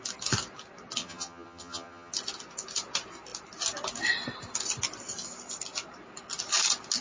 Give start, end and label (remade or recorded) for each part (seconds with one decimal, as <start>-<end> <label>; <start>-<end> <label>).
0.0-1.0 recorded; 1.0-2.1 remade; 2.1-7.0 recorded